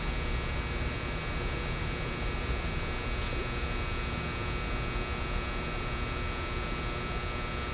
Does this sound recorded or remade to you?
recorded